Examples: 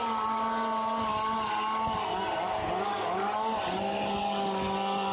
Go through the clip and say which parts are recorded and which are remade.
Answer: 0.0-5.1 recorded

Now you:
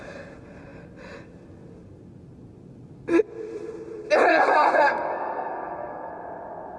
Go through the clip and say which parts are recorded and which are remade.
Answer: 0.0-4.3 recorded; 4.3-6.1 remade; 6.1-6.8 recorded